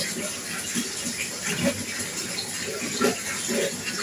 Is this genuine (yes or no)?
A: yes